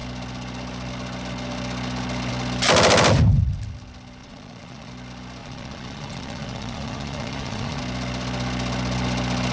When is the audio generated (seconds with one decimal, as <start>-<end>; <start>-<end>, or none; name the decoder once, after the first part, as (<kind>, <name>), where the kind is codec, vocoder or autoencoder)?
4.2-4.9 (vocoder, Vocos); 5.4-7.8